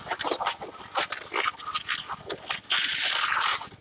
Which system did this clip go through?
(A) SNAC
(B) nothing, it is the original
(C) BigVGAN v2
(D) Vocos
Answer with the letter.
B